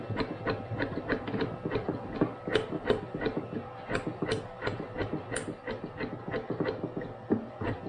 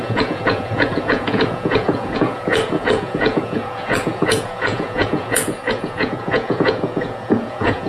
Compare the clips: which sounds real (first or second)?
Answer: first